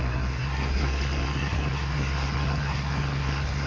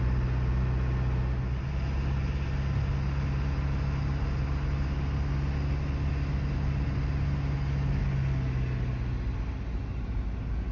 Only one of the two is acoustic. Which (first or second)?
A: second